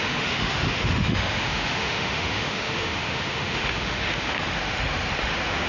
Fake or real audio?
fake